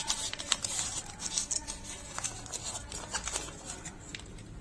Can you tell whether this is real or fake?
real